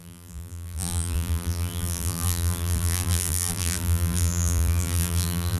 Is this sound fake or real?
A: fake